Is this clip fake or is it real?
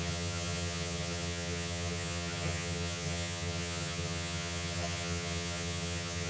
fake